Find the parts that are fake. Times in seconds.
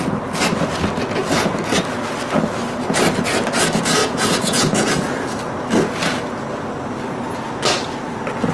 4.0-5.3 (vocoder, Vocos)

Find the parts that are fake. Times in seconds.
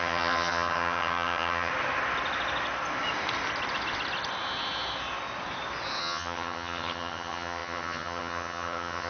0.0-1.7 (vocoder, HiFi-GAN); 6.0-9.1